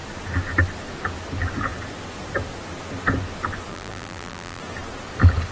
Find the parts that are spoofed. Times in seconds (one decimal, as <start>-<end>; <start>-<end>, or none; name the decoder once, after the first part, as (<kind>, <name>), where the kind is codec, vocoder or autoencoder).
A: 3.7-4.6 (vocoder, BigVGAN v2)